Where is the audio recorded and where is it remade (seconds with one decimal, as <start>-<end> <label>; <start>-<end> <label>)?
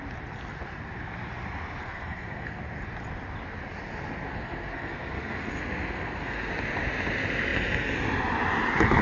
0.0-1.8 recorded; 1.8-2.6 remade; 2.6-4.3 recorded; 4.3-6.5 remade; 6.5-9.0 recorded